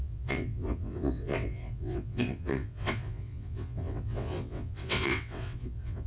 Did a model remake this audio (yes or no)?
yes